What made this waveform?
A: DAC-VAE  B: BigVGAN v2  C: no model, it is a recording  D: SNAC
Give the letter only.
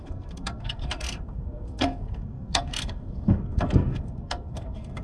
D